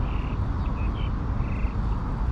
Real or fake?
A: real